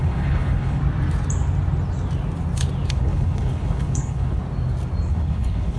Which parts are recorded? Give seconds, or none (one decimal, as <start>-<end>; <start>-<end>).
0.8-2.9; 4.4-5.1